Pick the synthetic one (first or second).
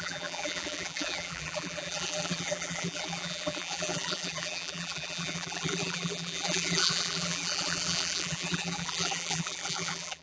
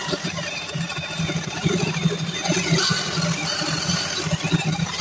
first